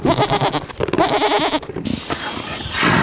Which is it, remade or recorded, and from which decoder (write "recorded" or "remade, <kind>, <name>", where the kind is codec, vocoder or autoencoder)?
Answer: recorded